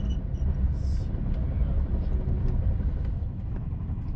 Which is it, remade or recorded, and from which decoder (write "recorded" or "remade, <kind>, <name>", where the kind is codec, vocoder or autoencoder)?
recorded